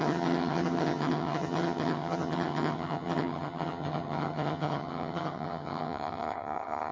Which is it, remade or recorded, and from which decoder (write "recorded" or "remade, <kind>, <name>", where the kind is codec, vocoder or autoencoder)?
remade, vocoder, HiFi-GAN